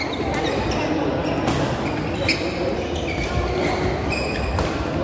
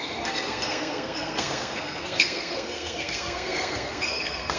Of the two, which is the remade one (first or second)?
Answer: second